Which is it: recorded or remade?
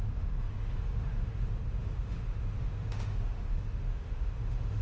remade